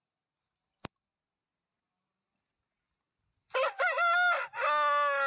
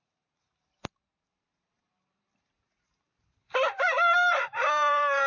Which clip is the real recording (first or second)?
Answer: first